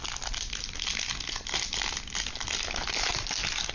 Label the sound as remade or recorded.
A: recorded